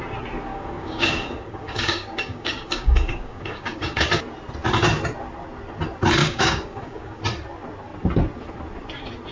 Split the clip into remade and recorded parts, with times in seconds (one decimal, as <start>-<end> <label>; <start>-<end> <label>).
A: 0.0-0.5 recorded; 0.5-4.1 remade; 4.1-6.2 recorded; 6.2-7.2 remade; 7.2-9.3 recorded